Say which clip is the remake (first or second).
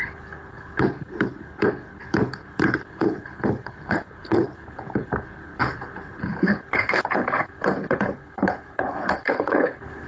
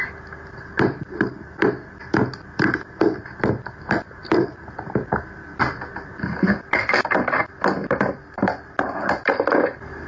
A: first